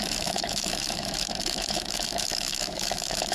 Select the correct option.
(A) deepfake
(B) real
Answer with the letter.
A